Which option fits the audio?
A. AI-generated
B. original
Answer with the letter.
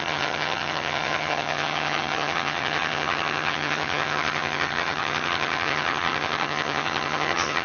A